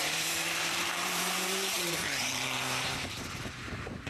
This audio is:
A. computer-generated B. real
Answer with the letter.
A